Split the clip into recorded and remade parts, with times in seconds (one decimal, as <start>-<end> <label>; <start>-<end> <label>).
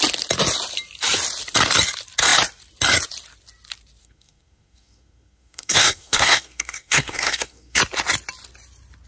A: 0.0-4.0 recorded; 4.0-7.8 remade; 7.8-9.1 recorded